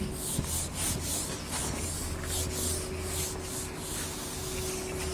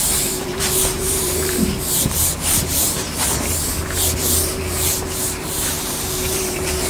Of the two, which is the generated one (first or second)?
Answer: second